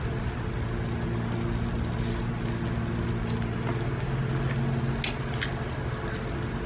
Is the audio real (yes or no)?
yes